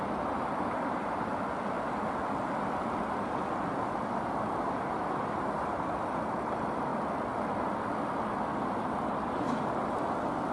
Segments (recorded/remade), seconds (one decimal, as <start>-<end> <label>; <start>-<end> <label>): 0.0-1.3 remade; 1.3-3.2 recorded; 3.2-6.9 remade; 6.9-10.5 recorded